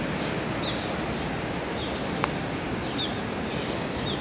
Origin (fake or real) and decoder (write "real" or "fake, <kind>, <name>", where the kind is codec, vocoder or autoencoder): fake, vocoder, BigVGAN v2